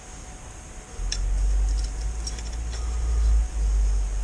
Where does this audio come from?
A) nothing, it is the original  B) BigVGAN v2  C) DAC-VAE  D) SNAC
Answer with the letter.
A